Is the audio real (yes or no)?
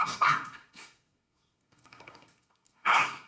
no